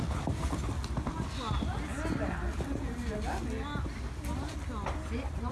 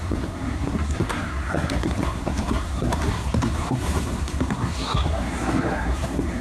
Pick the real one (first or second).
first